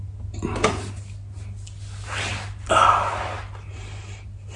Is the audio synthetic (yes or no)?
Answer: no